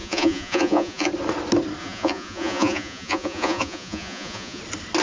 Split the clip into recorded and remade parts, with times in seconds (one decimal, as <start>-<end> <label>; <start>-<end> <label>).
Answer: 0.0-1.1 remade; 1.1-1.8 recorded; 1.8-4.6 remade; 4.6-5.0 recorded